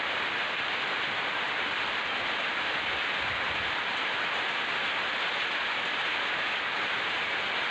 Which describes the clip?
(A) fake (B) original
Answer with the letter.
B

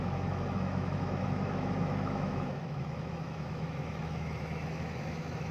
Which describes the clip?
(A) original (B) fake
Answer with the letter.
B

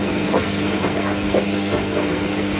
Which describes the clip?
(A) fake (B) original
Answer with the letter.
A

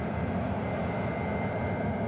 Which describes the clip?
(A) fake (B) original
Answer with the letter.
B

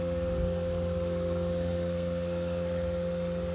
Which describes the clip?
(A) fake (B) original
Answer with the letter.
A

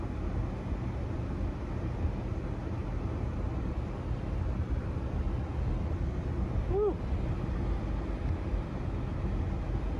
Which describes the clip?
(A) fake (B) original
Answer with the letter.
B